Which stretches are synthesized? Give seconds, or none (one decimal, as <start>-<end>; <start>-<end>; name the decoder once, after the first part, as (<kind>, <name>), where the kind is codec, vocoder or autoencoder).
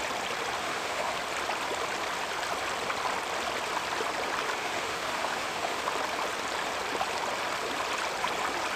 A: 0.6-1.1 (autoencoder, DAC-VAE); 4.6-5.8